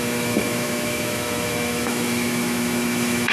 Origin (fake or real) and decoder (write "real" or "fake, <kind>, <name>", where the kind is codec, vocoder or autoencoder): fake, autoencoder, DAC-VAE